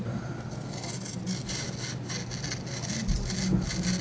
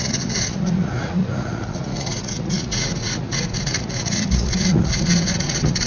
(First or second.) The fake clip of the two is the second